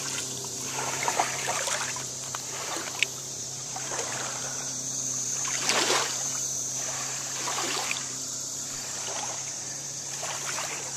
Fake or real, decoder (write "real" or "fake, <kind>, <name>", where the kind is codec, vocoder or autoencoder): fake, vocoder, BigVGAN v2